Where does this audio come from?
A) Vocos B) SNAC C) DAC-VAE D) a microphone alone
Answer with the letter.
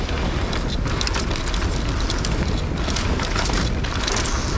D